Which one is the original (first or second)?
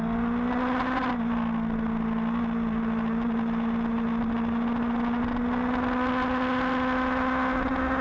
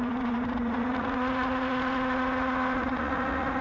first